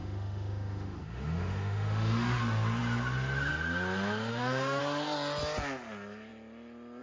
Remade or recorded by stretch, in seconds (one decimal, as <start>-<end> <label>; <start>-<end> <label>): 0.0-2.4 remade; 2.4-4.3 recorded; 4.3-4.8 remade; 4.8-7.0 recorded